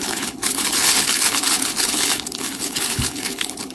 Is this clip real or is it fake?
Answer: fake